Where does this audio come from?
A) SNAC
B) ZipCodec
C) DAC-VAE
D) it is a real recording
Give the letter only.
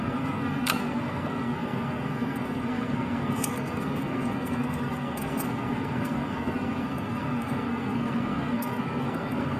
A